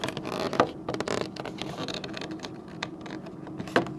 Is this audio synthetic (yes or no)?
no